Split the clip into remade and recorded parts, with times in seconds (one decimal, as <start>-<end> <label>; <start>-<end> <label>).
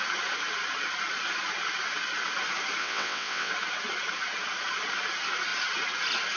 0.0-2.8 recorded; 2.8-3.5 remade; 3.5-6.4 recorded